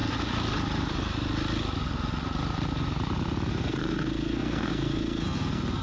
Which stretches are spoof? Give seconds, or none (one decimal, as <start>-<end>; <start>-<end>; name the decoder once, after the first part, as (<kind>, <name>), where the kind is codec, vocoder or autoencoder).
3.5-5.8 (codec, SNAC)